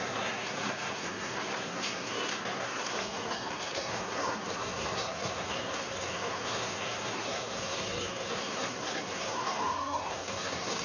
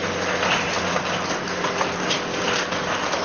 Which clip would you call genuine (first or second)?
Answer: second